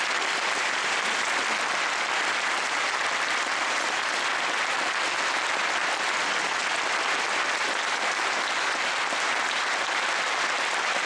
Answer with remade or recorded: recorded